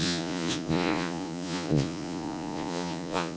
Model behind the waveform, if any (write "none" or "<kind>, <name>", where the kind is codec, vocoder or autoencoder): vocoder, Vocos